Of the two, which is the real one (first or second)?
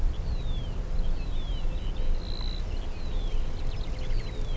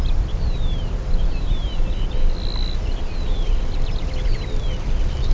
first